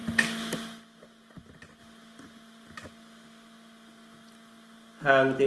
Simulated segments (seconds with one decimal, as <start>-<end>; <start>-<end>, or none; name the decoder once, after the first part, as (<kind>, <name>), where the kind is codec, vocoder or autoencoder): none